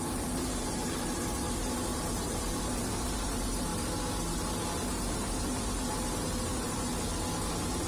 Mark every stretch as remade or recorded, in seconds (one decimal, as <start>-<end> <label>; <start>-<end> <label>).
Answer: 0.0-3.7 remade; 3.7-4.3 recorded; 4.3-6.9 remade; 6.9-7.9 recorded

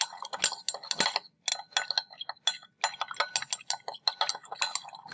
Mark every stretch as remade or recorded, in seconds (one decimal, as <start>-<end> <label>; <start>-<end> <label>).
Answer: 0.0-5.1 recorded

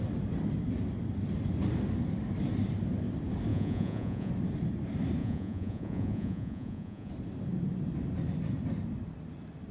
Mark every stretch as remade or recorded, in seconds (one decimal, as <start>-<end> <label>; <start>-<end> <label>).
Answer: 0.0-3.5 recorded; 3.5-4.3 remade; 4.3-5.2 recorded; 5.2-7.1 remade; 7.1-9.7 recorded